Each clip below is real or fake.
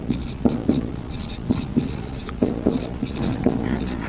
fake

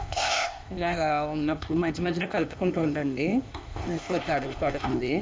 fake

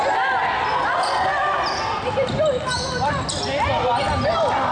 real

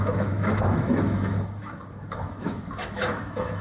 fake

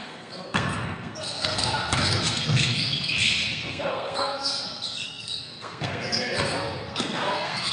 fake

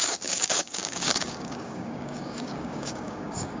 fake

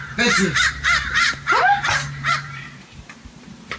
fake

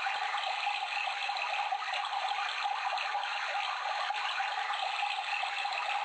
real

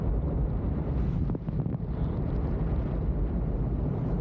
real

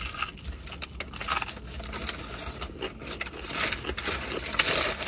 real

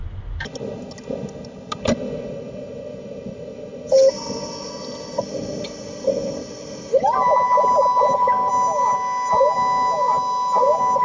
real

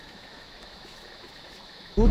fake